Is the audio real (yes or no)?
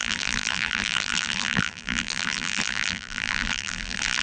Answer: no